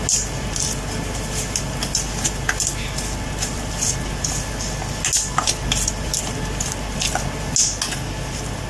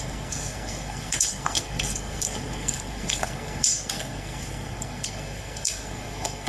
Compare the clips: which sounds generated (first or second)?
second